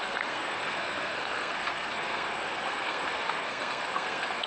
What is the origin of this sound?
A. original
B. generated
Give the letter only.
B